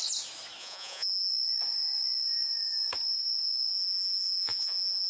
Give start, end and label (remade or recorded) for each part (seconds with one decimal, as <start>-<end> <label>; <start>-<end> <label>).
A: 0.0-0.6 recorded; 0.6-1.3 remade; 1.3-3.7 recorded; 3.7-5.1 remade